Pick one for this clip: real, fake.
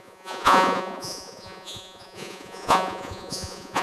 fake